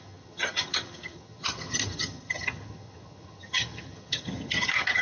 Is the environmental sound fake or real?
fake